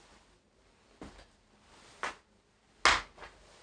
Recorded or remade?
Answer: recorded